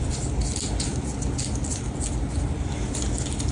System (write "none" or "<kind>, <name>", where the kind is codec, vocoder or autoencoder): none